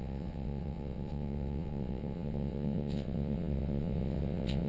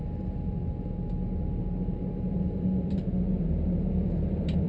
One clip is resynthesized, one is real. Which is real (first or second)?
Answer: second